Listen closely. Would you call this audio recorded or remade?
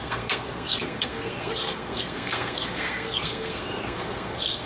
remade